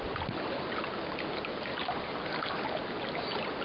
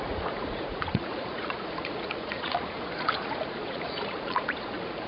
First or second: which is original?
first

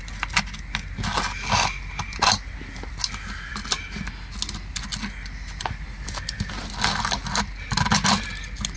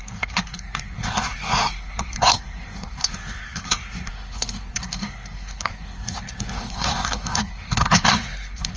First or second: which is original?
first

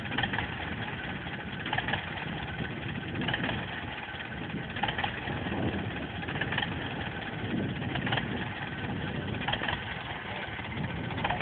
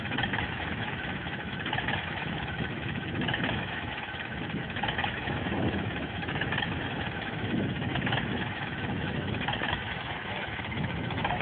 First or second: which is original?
first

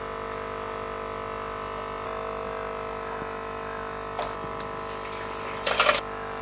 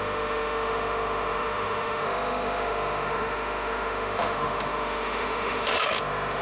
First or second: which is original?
first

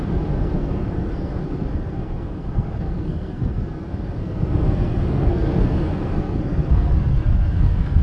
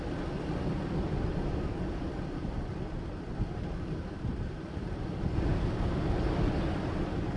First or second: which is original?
second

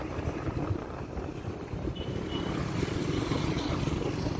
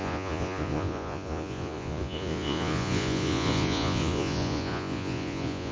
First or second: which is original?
first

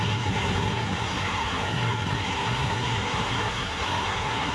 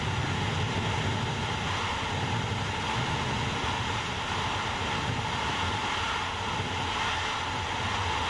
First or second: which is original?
second